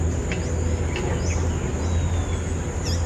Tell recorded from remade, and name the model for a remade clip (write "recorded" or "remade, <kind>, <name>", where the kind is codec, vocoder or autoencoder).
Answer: recorded